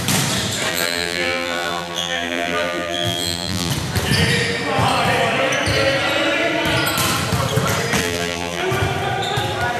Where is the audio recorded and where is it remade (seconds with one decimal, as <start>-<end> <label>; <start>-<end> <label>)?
0.0-0.7 recorded; 0.7-3.7 remade; 3.7-8.0 recorded; 8.0-8.6 remade; 8.6-9.8 recorded